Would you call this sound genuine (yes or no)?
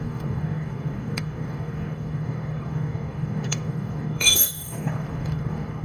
no